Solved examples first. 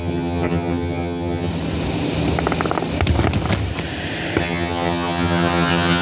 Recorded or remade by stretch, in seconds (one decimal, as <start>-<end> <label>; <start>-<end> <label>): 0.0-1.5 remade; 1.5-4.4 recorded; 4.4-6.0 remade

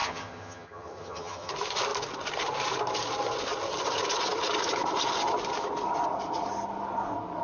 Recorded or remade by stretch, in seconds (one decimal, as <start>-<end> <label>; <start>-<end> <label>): 0.0-1.5 remade; 1.5-7.4 recorded

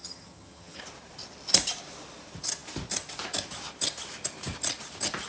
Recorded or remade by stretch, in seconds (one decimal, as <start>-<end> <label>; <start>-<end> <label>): 0.0-0.8 remade; 0.8-5.3 recorded

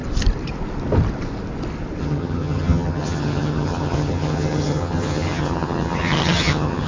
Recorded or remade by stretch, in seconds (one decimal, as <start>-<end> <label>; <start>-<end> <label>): 0.0-2.0 recorded; 2.0-6.9 remade

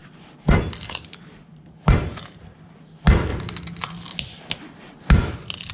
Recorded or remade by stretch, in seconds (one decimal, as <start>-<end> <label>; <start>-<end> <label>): 0.0-5.7 recorded

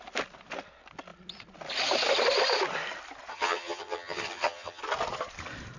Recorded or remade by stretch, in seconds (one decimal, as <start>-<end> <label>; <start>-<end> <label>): 0.0-3.3 recorded; 3.3-4.8 remade; 4.8-5.8 recorded

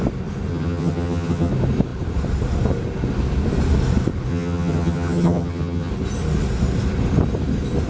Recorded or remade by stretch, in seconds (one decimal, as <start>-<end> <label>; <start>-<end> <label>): 0.0-0.5 recorded; 0.5-1.5 remade; 1.5-4.3 recorded; 4.3-5.9 remade; 5.9-7.9 recorded